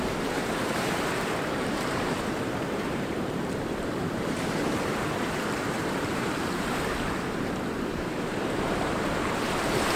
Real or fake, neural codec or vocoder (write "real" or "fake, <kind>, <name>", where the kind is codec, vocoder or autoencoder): fake, vocoder, BigVGAN v2